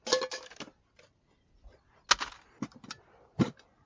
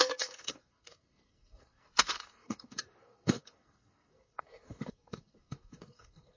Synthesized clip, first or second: second